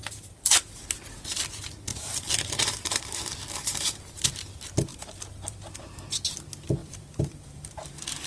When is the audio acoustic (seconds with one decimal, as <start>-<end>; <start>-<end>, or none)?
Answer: 0.0-1.9; 3.0-4.9; 5.8-6.8

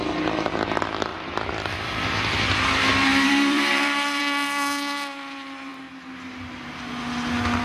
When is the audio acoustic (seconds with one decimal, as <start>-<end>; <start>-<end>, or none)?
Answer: 0.0-1.1; 2.0-2.9; 4.2-7.6

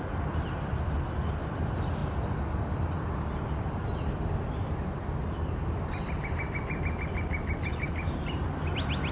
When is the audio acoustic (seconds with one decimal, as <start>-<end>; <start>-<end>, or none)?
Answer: 0.0-5.2; 8.4-9.1

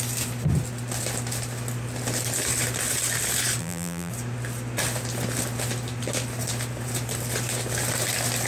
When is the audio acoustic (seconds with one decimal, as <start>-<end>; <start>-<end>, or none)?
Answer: 0.0-3.6; 4.1-8.5